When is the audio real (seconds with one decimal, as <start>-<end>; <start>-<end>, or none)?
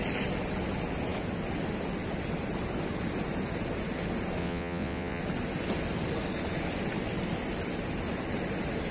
0.0-4.4; 5.2-8.9